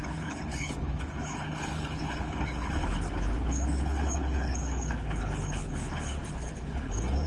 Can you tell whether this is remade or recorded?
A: remade